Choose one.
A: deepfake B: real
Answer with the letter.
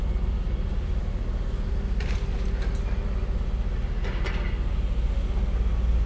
B